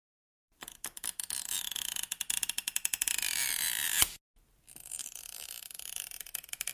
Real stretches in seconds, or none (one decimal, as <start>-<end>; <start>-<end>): 4.0-5.0